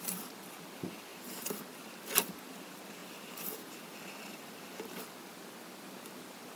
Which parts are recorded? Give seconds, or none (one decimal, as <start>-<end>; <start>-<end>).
0.0-1.1; 1.8-3.0; 5.0-6.6